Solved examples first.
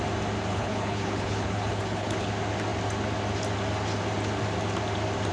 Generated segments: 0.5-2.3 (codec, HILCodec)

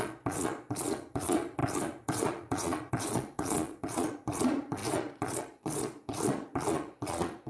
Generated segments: 0.0-7.5 (vocoder, Vocos)

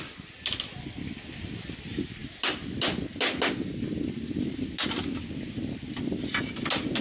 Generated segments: none